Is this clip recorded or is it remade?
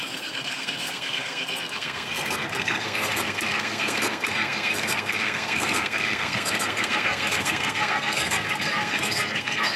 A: remade